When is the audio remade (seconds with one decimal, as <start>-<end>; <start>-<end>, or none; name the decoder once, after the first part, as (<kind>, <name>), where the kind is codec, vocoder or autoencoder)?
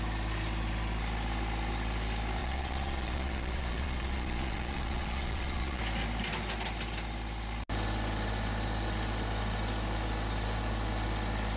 2.4-5.8 (vocoder, Vocos)